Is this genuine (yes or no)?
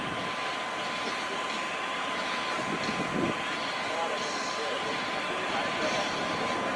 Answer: no